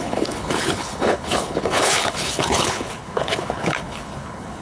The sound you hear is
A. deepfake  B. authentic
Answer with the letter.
A